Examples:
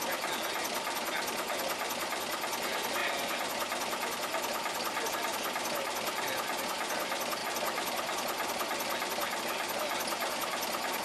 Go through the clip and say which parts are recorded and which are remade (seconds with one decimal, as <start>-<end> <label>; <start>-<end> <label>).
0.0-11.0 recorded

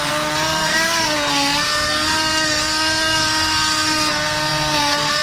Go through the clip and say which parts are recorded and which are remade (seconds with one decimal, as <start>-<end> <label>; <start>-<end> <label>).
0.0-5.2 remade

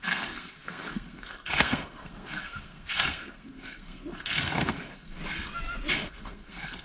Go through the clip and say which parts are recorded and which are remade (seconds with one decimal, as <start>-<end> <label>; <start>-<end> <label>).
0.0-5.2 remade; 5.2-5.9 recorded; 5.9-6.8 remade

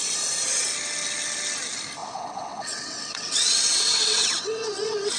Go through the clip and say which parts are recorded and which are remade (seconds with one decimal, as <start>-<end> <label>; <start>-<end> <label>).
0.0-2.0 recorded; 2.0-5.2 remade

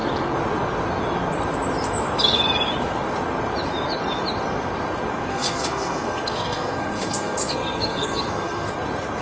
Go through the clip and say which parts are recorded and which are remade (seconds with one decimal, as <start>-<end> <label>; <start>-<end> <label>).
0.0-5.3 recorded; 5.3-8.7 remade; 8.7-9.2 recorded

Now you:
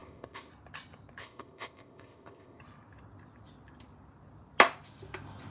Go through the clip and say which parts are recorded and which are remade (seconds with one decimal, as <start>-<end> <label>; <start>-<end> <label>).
0.0-0.5 remade; 0.5-1.2 recorded; 1.2-2.6 remade; 2.6-5.5 recorded

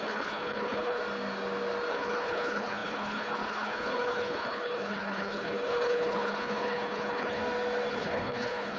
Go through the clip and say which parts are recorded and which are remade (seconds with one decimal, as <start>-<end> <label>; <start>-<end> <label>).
0.0-1.0 remade; 1.0-1.9 recorded; 1.9-7.4 remade; 7.4-7.9 recorded; 7.9-8.8 remade